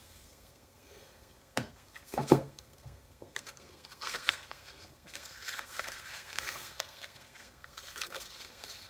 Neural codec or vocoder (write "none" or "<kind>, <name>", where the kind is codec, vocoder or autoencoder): codec, SNAC